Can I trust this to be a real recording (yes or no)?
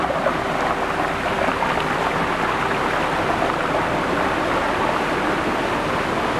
yes